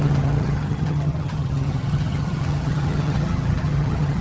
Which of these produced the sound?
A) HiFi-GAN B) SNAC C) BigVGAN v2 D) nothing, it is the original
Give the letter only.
A